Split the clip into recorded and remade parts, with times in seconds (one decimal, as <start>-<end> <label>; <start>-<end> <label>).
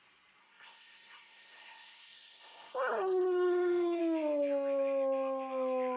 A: 0.0-0.4 recorded; 0.4-4.0 remade; 4.0-6.0 recorded